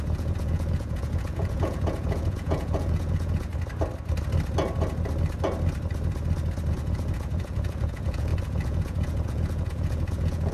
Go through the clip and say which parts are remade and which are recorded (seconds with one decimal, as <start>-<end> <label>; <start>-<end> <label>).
0.0-3.5 remade; 3.5-6.7 recorded; 6.7-10.5 remade